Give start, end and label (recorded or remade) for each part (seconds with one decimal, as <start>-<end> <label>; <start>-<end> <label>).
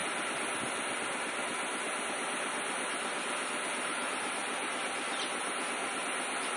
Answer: 0.0-6.6 recorded